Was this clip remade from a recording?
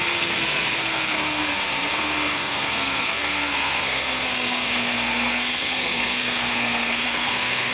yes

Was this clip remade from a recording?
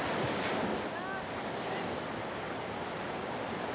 no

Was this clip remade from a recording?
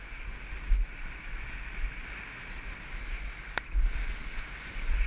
no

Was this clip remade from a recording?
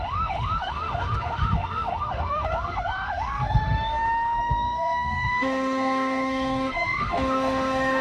yes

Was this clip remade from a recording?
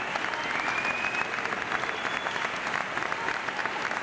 no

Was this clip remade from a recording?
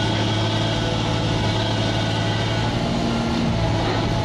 no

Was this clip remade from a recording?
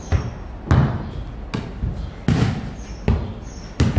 no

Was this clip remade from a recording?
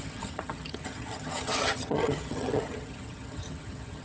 yes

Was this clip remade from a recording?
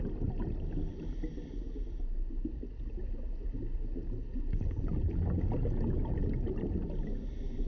no